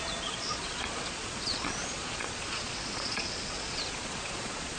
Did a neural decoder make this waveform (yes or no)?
yes